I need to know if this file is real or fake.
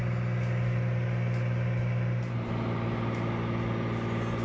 real